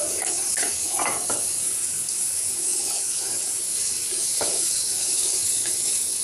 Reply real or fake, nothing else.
fake